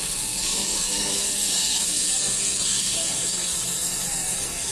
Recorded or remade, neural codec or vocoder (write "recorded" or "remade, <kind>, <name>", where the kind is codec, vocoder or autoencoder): remade, codec, SNAC